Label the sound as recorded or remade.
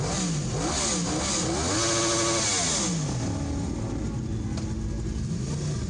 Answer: recorded